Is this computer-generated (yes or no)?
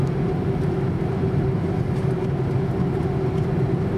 no